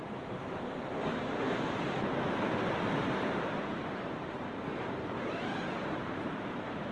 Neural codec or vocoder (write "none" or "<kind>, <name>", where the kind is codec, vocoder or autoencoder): vocoder, BigVGAN v2